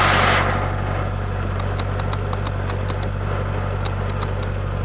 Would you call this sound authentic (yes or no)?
yes